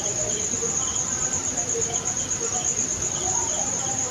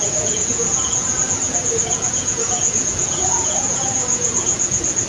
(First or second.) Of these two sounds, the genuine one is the first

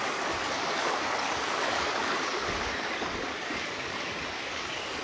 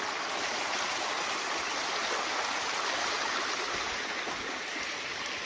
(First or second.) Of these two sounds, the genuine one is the second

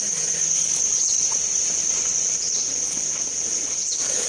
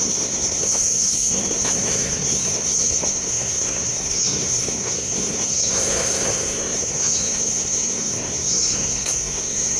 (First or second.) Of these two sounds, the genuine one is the first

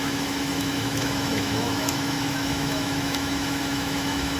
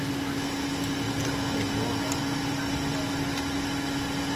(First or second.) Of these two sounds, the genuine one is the second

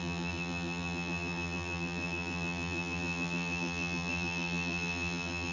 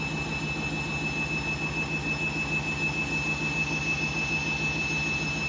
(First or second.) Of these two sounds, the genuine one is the second